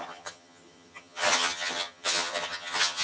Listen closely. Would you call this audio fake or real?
fake